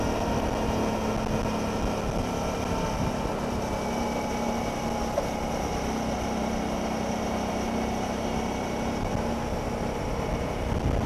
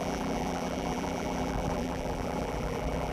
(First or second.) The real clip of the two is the first